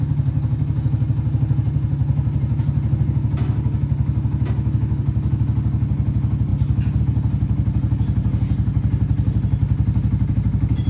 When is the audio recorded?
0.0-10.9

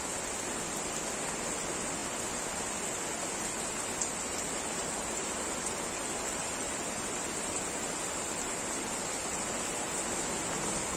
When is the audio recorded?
0.0-11.0

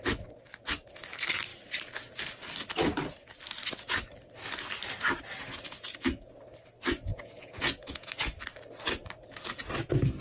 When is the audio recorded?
0.0-5.5; 6.4-7.1; 8.1-10.2

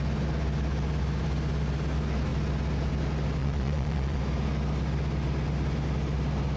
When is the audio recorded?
0.0-3.4; 4.2-6.6

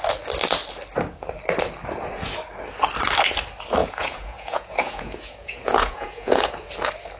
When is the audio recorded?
0.0-3.8; 6.5-7.2

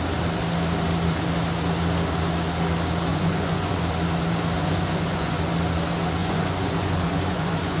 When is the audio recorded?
0.0-3.1; 3.8-4.6; 5.4-6.2

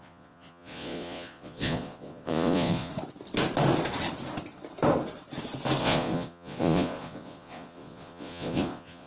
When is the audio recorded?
2.9-5.8

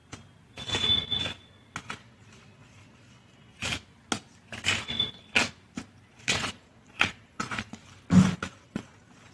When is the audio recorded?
0.0-1.8; 3.5-6.2; 7.8-8.5